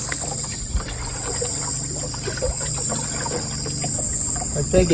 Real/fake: real